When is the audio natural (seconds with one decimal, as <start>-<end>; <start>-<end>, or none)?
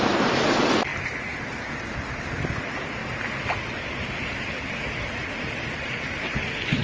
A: 0.0-6.8